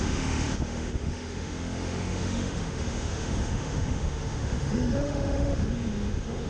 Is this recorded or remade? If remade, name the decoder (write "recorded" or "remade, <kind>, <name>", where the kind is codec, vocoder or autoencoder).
remade, autoencoder, DAC-VAE